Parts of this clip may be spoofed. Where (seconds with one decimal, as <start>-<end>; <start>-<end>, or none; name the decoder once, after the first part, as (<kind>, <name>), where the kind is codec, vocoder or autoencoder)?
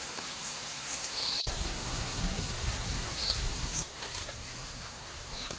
0.0-5.6 (codec, SNAC)